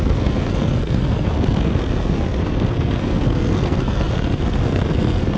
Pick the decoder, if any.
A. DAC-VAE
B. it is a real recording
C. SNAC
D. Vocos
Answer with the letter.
C